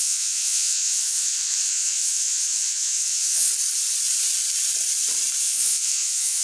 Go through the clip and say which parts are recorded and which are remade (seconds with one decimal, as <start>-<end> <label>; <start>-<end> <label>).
0.0-3.5 remade; 3.5-5.4 recorded; 5.4-6.4 remade